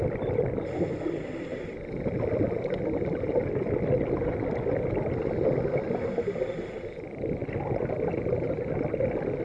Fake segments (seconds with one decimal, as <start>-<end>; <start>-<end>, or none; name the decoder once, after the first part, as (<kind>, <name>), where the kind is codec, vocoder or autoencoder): none